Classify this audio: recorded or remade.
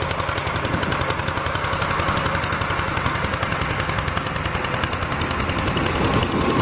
recorded